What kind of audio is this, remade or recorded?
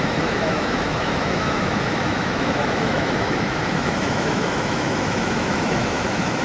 remade